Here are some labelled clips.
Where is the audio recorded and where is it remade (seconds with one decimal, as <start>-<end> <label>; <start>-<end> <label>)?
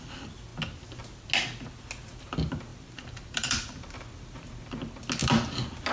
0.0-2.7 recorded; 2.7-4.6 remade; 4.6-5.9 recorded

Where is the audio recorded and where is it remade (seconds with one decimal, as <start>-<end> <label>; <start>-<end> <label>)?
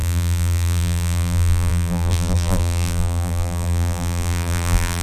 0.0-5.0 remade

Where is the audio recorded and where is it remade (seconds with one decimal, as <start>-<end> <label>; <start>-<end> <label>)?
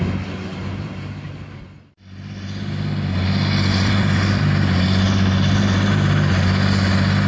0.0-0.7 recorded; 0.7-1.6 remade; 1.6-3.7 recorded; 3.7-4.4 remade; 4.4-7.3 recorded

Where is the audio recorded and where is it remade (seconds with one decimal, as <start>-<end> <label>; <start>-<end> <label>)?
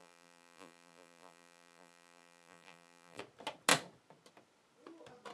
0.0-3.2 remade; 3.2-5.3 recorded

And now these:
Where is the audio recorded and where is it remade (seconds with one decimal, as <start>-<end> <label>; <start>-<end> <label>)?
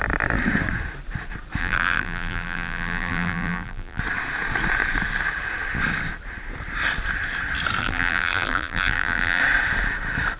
0.0-1.6 recorded; 1.6-4.0 remade; 4.0-7.8 recorded; 7.8-9.4 remade; 9.4-10.4 recorded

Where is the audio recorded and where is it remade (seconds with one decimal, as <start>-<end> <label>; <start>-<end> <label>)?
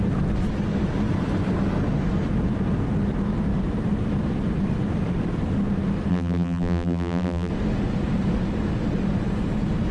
0.0-6.1 recorded; 6.1-7.5 remade; 7.5-9.9 recorded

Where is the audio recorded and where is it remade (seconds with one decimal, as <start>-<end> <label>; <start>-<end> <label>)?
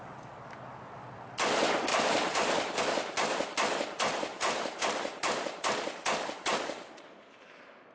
0.0-1.9 recorded; 1.9-2.8 remade; 2.8-4.3 recorded; 4.3-7.9 remade